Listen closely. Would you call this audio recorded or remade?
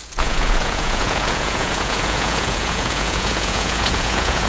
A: remade